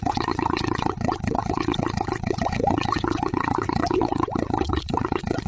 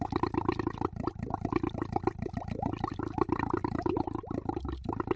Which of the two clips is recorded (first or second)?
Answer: second